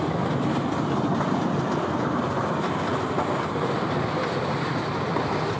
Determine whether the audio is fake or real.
fake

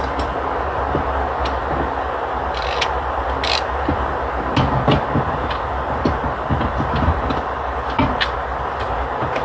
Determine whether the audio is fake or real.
real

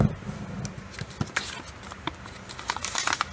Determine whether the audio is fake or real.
real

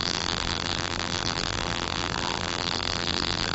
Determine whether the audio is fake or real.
fake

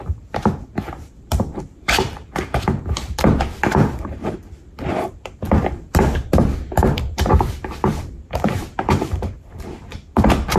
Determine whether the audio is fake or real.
fake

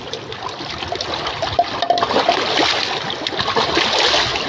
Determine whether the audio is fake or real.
real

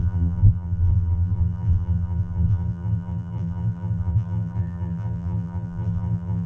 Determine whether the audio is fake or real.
fake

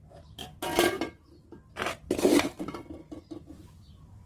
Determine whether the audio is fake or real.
real